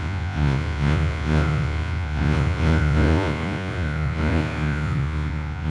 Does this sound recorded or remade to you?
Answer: remade